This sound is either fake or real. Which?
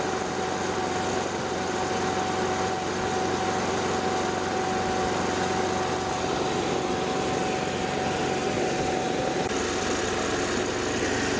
real